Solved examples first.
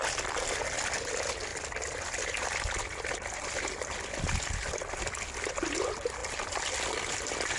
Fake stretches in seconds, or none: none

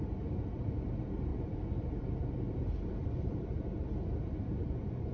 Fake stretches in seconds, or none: 1.3-4.4 (vocoder, BigVGAN v2)

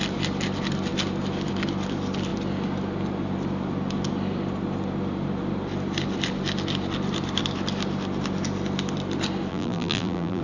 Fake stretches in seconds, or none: 9.5-10.4 (vocoder, BigVGAN v2)

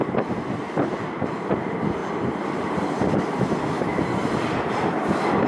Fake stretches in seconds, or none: 2.0-3.0 (vocoder, BigVGAN v2)

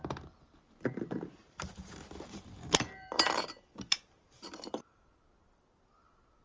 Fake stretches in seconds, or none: 1.4-5.1 (vocoder, BigVGAN v2)

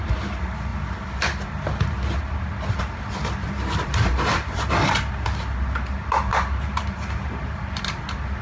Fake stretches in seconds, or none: 3.4-5.1 (vocoder, BigVGAN v2); 6.3-7.8

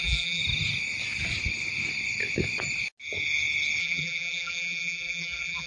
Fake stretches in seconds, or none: 0.0-0.4 (vocoder, BigVGAN v2); 3.8-5.7

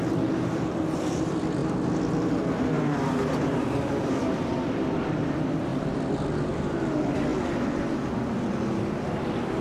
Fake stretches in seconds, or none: 0.0-1.6 (vocoder, BigVGAN v2); 2.3-7.3; 8.8-9.6